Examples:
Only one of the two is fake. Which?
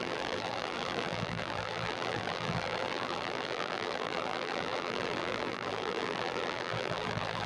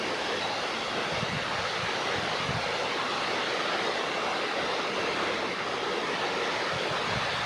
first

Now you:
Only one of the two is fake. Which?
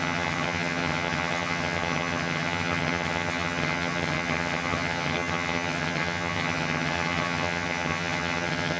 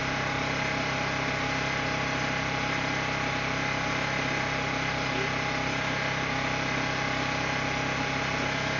first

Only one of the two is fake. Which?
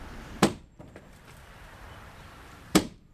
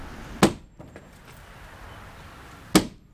first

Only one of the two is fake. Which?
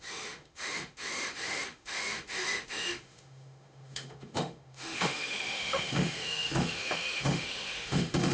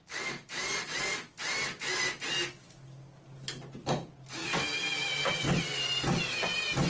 first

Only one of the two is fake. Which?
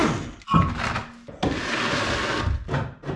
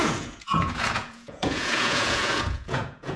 second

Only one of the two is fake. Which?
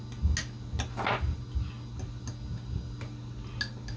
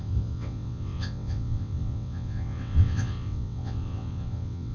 second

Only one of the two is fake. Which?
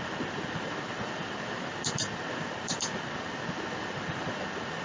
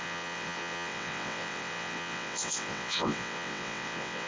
second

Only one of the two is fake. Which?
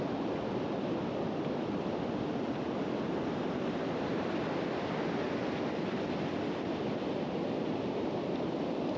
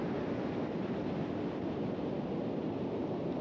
first